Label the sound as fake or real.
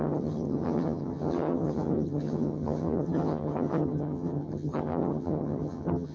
fake